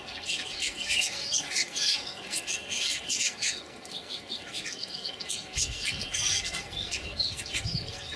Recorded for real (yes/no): no